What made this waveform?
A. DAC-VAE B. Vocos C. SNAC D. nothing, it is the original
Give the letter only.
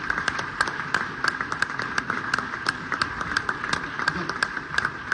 D